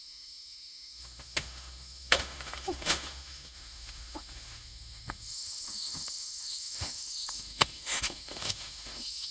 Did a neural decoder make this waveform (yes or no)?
yes